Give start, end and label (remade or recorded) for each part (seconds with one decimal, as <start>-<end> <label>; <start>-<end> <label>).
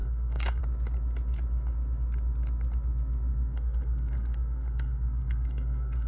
0.0-0.6 remade; 0.6-3.3 recorded; 3.3-6.1 remade